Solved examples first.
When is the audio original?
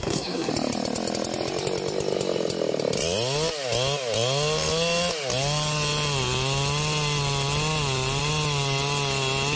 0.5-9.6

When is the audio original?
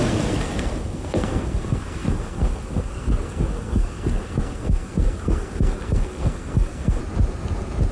7.0-7.9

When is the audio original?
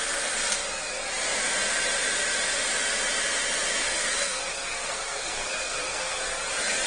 0.0-3.8; 6.2-6.9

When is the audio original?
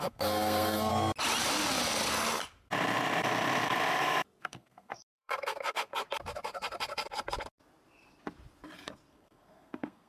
0.9-4.4; 5.9-9.1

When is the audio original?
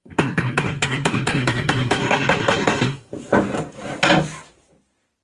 3.1-5.2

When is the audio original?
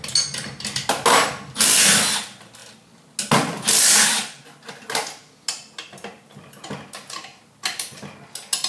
0.0-8.7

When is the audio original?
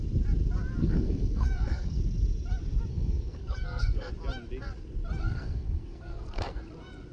0.0-0.8; 2.0-2.9; 4.1-5.2; 6.6-7.1